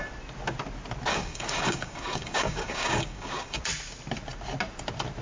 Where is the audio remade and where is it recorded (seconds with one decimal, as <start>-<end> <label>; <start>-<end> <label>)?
0.0-1.1 recorded; 1.1-3.6 remade; 3.6-5.2 recorded